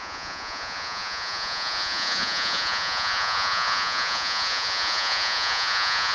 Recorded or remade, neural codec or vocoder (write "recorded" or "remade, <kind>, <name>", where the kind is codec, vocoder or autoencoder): remade, vocoder, Vocos